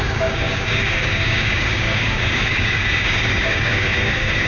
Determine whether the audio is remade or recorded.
remade